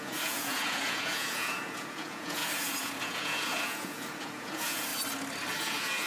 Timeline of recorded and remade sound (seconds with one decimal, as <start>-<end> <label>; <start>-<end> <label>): 0.0-4.9 remade; 4.9-5.5 recorded; 5.5-6.1 remade